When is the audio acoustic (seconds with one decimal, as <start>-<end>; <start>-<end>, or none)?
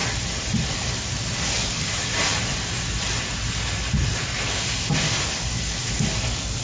0.8-6.6